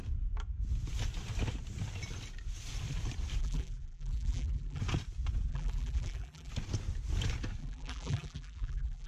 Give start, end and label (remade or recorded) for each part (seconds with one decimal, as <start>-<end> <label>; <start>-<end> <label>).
0.0-3.4 recorded; 3.4-4.8 remade; 4.8-5.5 recorded; 5.5-6.5 remade; 6.5-7.6 recorded; 7.6-9.1 remade

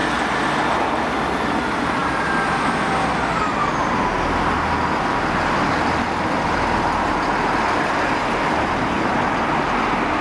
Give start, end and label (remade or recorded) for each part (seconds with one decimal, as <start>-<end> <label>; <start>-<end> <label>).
0.0-8.2 recorded; 8.2-9.2 remade; 9.2-10.2 recorded